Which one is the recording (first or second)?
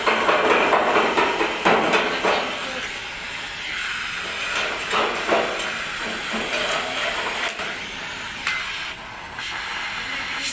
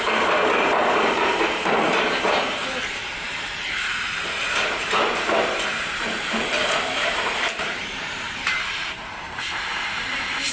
first